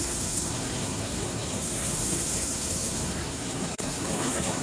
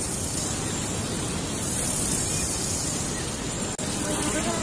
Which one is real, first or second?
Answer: second